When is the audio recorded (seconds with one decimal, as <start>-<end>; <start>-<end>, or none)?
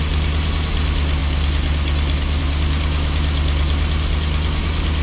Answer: 0.0-5.0